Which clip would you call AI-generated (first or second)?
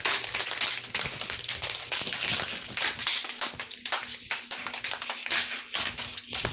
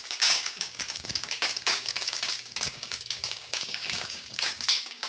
second